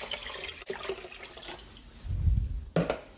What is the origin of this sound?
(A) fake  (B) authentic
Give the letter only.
B